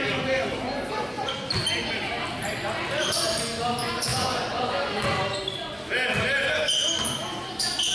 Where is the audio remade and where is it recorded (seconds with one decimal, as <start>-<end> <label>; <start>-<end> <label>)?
0.0-4.1 recorded; 4.1-4.9 remade; 4.9-7.9 recorded

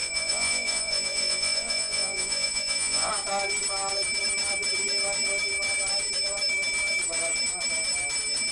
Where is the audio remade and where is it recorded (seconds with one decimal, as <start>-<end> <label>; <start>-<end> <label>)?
0.0-3.1 remade; 3.1-8.5 recorded

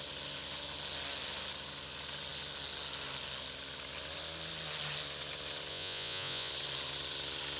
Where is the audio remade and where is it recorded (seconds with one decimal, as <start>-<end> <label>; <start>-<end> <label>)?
0.0-5.7 recorded; 5.7-6.5 remade; 6.5-7.6 recorded

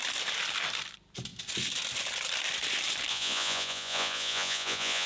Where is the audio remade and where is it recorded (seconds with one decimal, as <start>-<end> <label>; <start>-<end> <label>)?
0.0-3.1 recorded; 3.1-5.1 remade

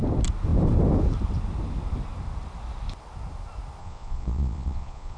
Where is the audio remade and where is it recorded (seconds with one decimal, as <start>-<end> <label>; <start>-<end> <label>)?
0.0-3.8 recorded; 3.8-5.2 remade